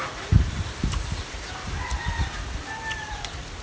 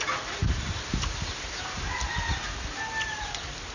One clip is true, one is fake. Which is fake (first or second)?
first